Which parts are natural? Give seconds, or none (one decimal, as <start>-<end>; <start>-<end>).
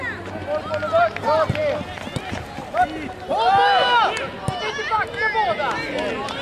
0.0-6.4